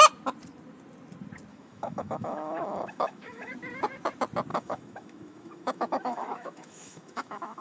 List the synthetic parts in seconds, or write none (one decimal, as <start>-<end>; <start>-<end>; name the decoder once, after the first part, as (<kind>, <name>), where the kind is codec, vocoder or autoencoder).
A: 1.5-3.5 (autoencoder, DAC-VAE); 4.5-7.6